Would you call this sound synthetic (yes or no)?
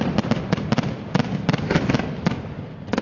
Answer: no